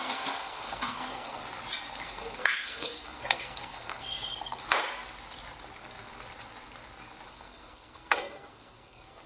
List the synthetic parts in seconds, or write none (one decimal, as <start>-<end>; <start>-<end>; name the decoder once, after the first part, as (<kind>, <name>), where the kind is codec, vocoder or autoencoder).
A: 0.0-1.4 (codec, SNAC); 2.0-4.6; 7.3-9.3